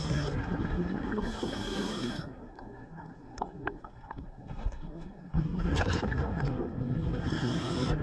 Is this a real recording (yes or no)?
no